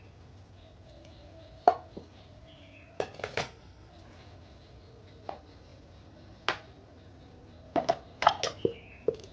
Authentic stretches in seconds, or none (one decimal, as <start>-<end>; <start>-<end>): 0.0-3.4; 3.9-9.3